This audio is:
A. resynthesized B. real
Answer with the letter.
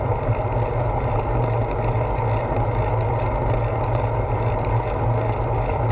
B